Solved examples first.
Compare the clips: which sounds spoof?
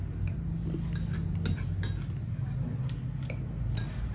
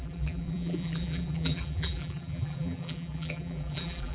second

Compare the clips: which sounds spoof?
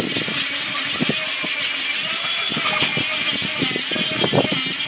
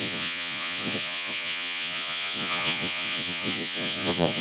second